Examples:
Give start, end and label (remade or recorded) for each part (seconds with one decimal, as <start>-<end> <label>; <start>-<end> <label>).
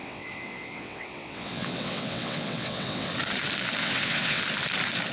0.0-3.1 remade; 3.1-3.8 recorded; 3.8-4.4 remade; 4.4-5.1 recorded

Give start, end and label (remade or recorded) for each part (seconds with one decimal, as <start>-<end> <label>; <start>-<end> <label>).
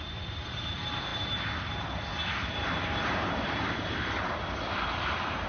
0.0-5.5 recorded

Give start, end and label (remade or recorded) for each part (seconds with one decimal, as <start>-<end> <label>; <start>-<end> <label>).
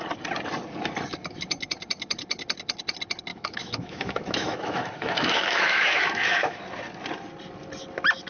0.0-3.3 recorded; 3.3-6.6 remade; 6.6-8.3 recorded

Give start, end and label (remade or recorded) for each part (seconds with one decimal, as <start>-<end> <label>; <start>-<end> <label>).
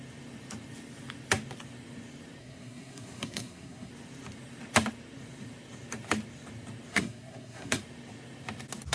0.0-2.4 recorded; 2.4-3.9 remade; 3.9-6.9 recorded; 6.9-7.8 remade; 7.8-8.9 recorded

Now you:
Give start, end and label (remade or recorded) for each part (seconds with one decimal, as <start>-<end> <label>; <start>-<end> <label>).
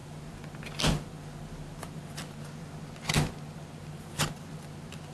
0.0-5.1 recorded